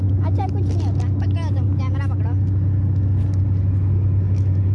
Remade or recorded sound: recorded